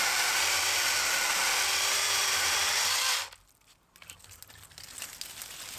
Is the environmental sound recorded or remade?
recorded